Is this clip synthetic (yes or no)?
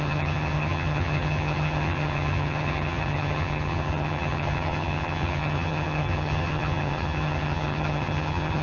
yes